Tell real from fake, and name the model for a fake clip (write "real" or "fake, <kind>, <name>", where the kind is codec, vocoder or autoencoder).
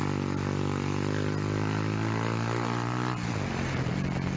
real